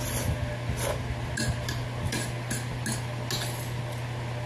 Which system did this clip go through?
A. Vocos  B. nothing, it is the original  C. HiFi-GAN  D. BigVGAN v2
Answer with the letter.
B